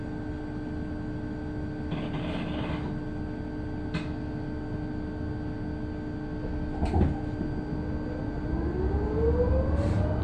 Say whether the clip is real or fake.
real